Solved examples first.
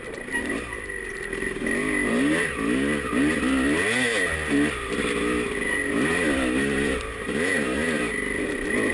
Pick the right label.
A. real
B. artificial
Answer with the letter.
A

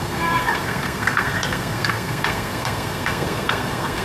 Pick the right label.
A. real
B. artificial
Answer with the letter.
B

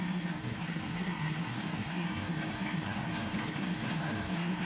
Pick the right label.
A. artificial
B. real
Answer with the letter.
A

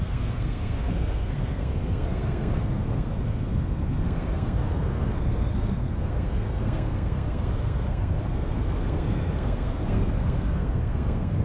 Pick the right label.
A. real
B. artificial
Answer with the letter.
B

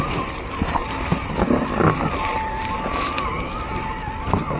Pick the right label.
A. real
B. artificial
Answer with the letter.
A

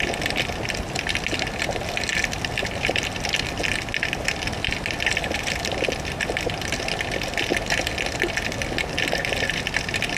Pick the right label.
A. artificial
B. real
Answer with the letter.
B